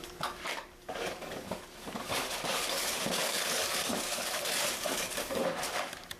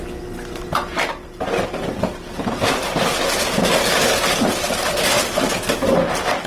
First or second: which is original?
second